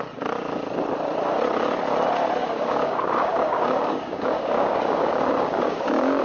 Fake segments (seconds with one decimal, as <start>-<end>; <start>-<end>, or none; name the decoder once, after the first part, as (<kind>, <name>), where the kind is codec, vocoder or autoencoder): 2.4-6.2 (codec, DAC)